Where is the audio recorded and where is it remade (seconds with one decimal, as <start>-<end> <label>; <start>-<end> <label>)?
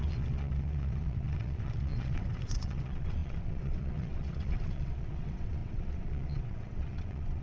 0.0-7.4 remade